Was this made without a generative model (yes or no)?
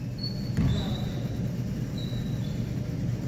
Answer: yes